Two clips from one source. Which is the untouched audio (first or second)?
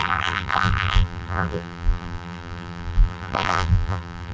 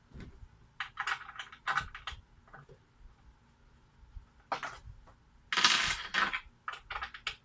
second